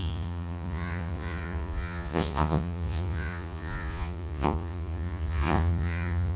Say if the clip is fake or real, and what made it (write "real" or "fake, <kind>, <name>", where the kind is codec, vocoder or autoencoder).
fake, vocoder, Vocos